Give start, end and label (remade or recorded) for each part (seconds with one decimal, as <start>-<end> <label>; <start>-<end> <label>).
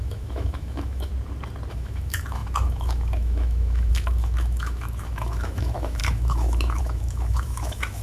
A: 0.0-1.1 remade; 1.1-1.7 recorded; 1.7-8.0 remade